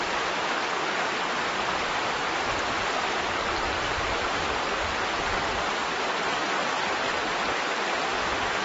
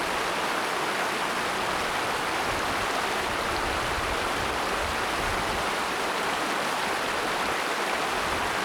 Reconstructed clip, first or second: first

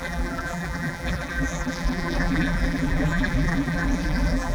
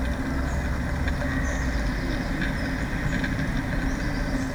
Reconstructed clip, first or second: first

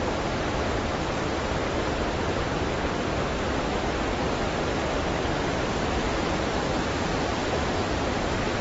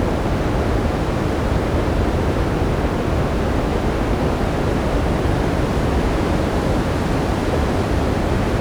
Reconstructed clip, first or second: first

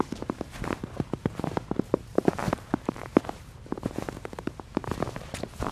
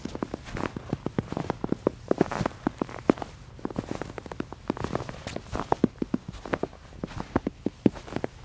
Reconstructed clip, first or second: first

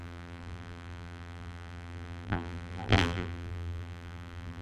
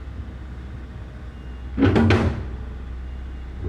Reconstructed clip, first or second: first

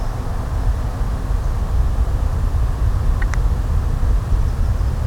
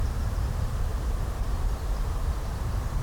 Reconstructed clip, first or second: second